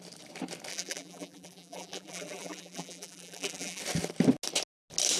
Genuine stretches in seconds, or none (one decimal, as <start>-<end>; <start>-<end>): 0.0-0.7; 3.8-5.2